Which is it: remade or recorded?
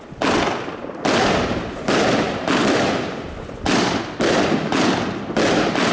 recorded